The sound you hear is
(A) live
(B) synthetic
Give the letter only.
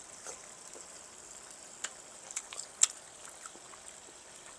A